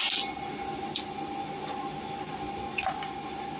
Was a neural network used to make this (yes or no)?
no